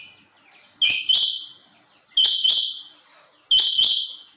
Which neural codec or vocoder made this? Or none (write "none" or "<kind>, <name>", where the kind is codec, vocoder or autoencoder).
none